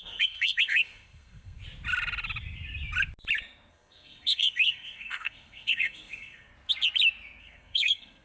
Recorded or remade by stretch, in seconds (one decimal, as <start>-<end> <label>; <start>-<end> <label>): 0.0-1.6 remade; 1.6-3.7 recorded; 3.7-6.5 remade; 6.5-7.4 recorded; 7.4-8.2 remade